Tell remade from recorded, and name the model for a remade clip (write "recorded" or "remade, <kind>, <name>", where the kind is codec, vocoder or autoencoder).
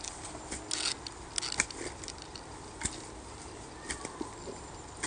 recorded